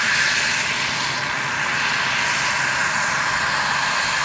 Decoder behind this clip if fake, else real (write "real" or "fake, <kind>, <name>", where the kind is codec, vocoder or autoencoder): real